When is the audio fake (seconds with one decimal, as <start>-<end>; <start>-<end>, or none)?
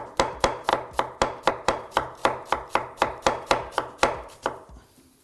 0.0-0.7; 1.5-2.2; 2.7-5.2